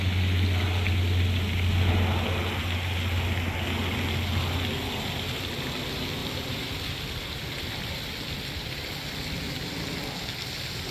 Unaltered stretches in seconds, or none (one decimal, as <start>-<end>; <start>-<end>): 0.0-6.2; 8.9-10.9